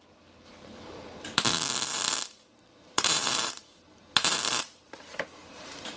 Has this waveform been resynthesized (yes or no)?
yes